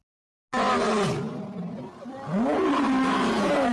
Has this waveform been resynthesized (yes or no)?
no